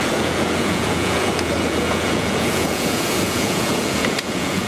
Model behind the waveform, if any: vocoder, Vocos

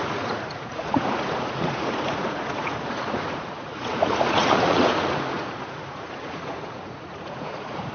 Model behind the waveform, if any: vocoder, Vocos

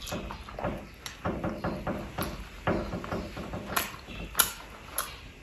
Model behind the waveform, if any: none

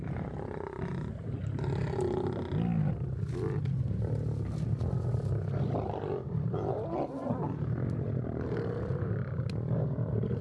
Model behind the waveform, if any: none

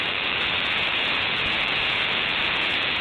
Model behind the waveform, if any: vocoder, Vocos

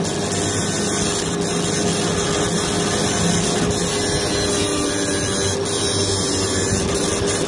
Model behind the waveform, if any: none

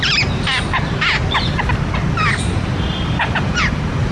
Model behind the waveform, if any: none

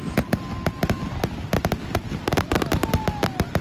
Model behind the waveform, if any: none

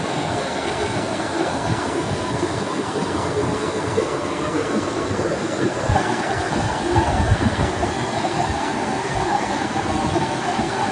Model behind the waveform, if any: codec, SNAC